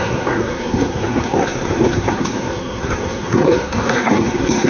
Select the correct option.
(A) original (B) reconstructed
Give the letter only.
B